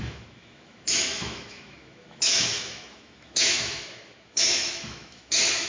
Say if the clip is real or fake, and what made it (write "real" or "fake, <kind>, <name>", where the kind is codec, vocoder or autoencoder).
fake, autoencoder, DAC-VAE